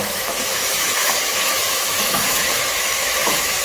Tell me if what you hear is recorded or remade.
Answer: remade